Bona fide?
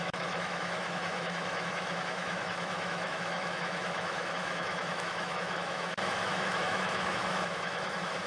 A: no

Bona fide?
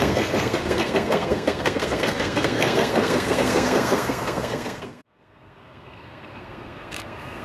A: no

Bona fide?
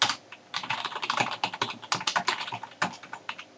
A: yes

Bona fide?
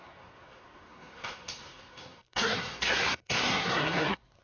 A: no